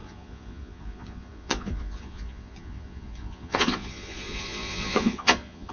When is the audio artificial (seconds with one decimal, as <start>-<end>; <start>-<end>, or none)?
0.0-5.7